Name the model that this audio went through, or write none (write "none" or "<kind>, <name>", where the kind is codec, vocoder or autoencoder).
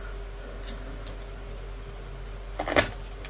none